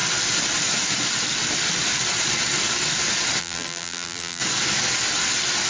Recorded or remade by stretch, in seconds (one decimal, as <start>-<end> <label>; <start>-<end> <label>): 0.0-3.4 recorded; 3.4-4.4 remade; 4.4-5.7 recorded